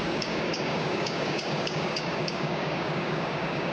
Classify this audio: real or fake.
fake